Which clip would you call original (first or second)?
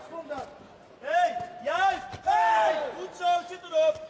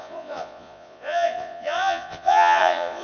first